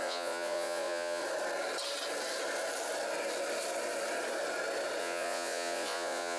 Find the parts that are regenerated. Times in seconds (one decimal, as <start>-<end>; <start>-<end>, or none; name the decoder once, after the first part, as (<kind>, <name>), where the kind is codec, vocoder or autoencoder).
0.0-1.2 (vocoder, Vocos); 5.0-6.4